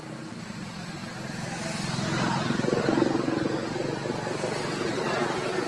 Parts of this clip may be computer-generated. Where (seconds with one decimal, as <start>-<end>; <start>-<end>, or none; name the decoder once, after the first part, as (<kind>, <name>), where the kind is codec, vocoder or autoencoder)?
none